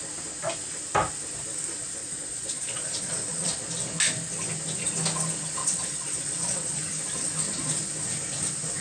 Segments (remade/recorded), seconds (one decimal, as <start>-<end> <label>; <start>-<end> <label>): 0.0-2.0 recorded; 2.0-3.6 remade; 3.6-5.6 recorded; 5.6-6.8 remade; 6.8-8.8 recorded